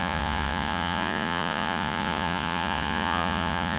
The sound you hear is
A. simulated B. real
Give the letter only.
A